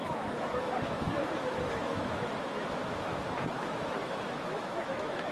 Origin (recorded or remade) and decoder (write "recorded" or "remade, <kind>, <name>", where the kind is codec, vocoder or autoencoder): remade, autoencoder, DAC-VAE